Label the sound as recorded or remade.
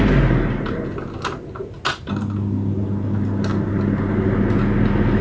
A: recorded